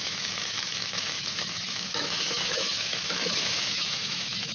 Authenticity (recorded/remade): remade